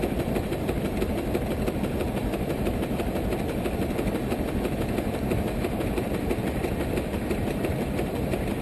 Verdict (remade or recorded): remade